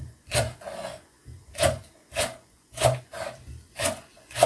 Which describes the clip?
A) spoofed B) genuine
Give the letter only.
A